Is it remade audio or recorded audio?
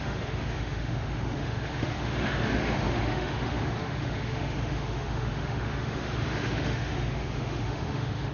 remade